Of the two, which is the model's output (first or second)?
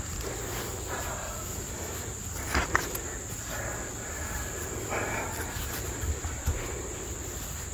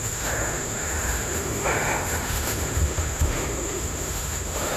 second